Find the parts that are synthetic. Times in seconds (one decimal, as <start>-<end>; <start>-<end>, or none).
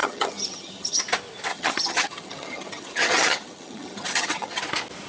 0.0-1.0; 1.5-4.6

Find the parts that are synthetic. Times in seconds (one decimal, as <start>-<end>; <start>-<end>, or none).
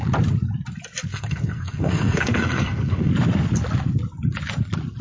1.1-3.1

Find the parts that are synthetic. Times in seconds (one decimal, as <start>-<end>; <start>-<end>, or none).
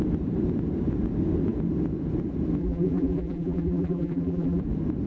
2.6-4.6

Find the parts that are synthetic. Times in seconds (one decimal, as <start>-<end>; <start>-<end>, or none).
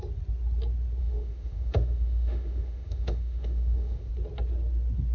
1.0-4.1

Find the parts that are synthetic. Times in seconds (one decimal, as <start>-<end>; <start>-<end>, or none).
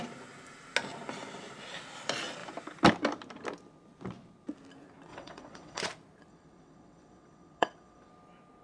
5.1-5.8; 6.3-8.1